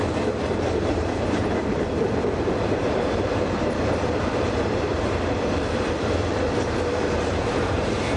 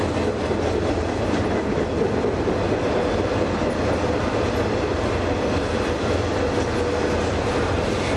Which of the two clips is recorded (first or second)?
second